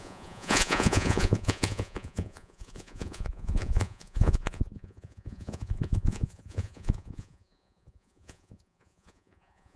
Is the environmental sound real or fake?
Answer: fake